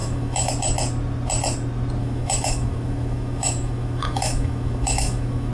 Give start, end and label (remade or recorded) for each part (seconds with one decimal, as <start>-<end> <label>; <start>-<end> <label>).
0.0-0.5 remade; 0.5-2.0 recorded; 2.0-5.5 remade

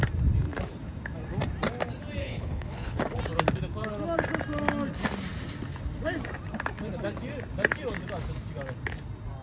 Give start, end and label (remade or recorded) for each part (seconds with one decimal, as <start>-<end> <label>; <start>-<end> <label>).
0.0-2.2 recorded; 2.2-3.2 remade; 3.2-9.4 recorded

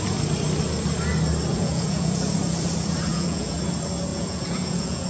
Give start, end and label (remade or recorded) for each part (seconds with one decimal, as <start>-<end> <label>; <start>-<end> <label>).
0.0-1.5 recorded; 1.5-2.3 remade; 2.3-3.1 recorded; 3.1-3.6 remade; 3.6-4.1 recorded; 4.1-5.1 remade